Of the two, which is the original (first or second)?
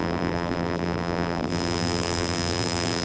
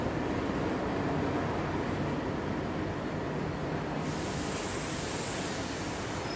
second